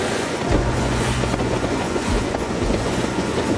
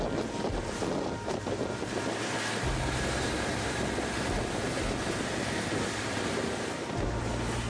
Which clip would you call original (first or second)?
second